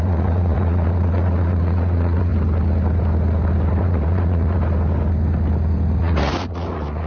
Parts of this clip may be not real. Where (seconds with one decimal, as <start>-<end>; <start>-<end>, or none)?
0.0-2.3; 3.8-4.6; 6.0-7.1